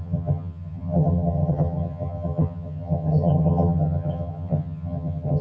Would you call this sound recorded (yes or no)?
no